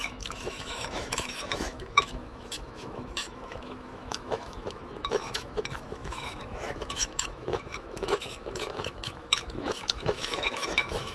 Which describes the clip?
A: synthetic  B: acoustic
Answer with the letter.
A